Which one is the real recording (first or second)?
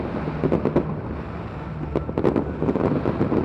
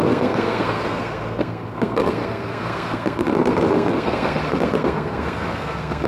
first